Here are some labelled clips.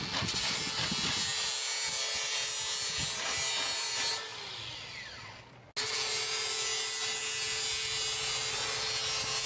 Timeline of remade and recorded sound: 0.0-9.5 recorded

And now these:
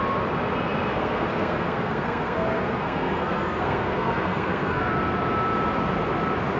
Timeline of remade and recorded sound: 0.0-0.9 recorded; 0.9-4.9 remade; 4.9-6.6 recorded

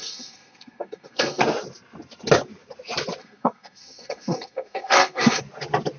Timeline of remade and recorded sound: 0.0-1.4 remade; 1.4-3.2 recorded; 3.2-5.4 remade; 5.4-6.0 recorded

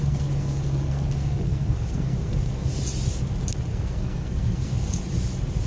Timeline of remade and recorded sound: 0.0-2.7 remade; 2.7-3.7 recorded; 3.7-5.0 remade; 5.0-5.7 recorded

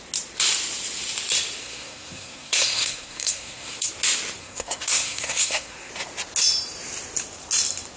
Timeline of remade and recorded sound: 0.0-1.6 recorded; 1.6-3.9 remade; 3.9-4.4 recorded; 4.4-5.9 remade; 5.9-8.0 recorded